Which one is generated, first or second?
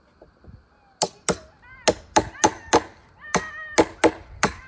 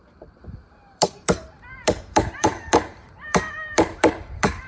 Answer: second